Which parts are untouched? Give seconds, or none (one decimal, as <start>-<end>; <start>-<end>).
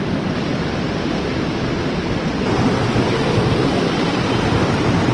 0.5-3.6